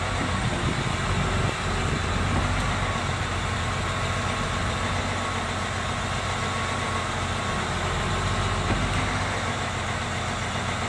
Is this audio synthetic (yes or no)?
no